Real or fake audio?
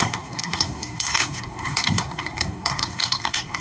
fake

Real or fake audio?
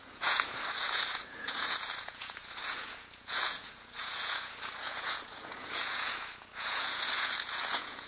fake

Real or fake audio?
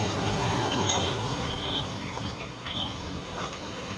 fake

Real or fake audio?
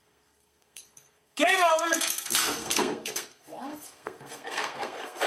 fake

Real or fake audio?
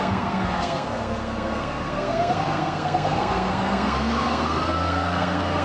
fake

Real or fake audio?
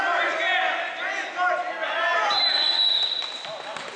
real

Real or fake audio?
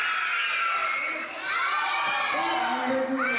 real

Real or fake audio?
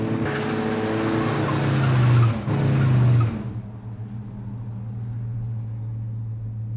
real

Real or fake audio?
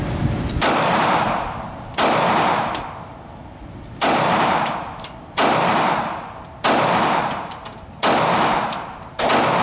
real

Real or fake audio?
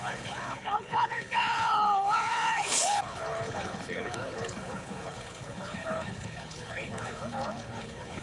fake